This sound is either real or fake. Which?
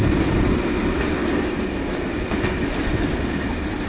real